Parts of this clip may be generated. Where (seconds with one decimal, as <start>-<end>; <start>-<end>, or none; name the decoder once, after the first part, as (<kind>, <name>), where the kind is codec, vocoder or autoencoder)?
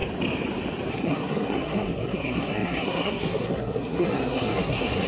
0.9-5.1 (codec, SNAC)